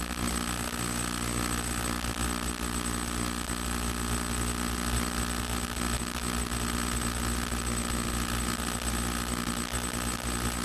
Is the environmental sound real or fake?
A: real